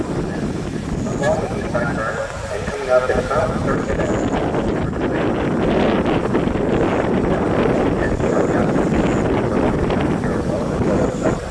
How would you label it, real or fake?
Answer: real